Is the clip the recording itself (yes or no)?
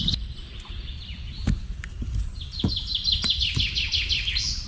yes